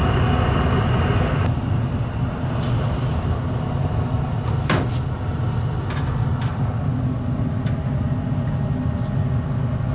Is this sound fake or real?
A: real